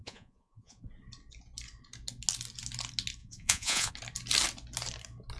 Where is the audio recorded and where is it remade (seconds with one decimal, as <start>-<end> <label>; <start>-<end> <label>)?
0.0-0.9 remade; 0.9-3.2 recorded; 3.2-3.9 remade; 3.9-5.4 recorded